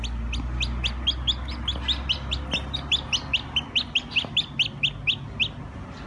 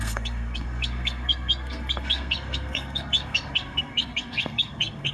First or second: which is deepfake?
second